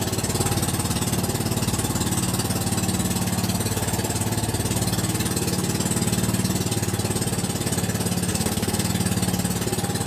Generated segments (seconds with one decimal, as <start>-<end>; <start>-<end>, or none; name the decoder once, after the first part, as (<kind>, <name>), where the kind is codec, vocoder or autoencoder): 8.3-8.9 (codec, SNAC)